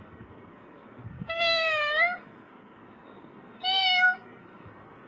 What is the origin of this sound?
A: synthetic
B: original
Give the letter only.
A